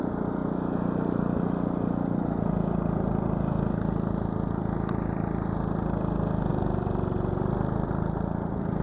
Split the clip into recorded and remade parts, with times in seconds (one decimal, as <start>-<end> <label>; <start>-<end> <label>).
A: 0.0-8.8 recorded